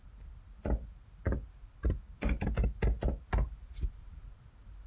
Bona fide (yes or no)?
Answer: yes